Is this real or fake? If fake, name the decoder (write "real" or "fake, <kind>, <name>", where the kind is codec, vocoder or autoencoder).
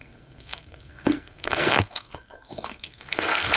fake, codec, SNAC